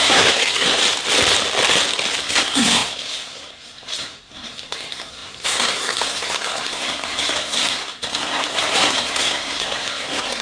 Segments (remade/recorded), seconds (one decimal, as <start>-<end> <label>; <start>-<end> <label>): 0.0-0.8 remade; 0.8-2.2 recorded; 2.2-10.4 remade